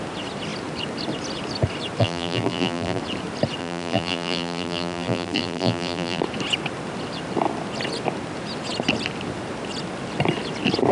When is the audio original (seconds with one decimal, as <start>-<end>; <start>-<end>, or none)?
0.0-2.0; 3.0-3.6; 6.2-10.9